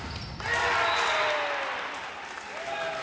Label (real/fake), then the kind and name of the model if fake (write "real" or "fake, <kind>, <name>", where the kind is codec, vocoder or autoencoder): real